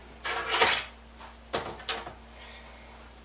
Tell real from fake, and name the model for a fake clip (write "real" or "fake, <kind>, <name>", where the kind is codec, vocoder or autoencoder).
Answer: real